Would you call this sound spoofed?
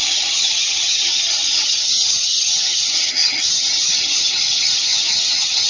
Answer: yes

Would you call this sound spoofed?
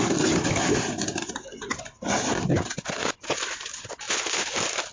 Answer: no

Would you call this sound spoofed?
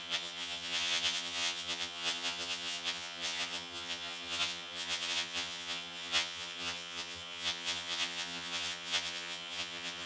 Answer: yes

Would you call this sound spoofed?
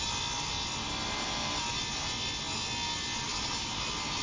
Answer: no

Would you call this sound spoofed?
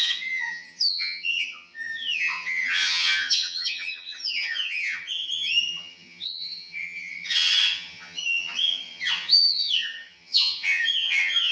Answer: yes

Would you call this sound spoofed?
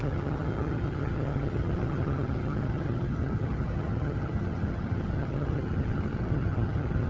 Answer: yes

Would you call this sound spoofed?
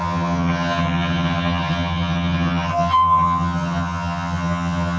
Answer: yes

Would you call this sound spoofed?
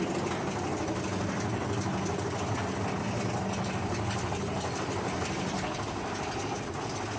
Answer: no